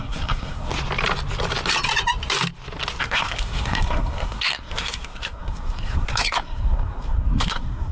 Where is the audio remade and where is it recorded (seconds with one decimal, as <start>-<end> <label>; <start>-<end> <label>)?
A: 0.0-0.7 remade; 0.7-3.0 recorded; 3.0-7.9 remade